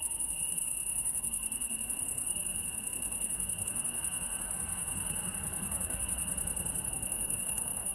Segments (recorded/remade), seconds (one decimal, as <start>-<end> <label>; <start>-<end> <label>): 0.0-6.3 remade; 6.3-6.9 recorded; 6.9-7.9 remade